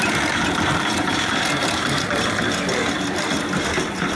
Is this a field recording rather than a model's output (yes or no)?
no